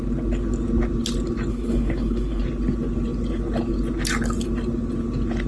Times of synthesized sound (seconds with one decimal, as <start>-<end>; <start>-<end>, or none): 1.5-2.4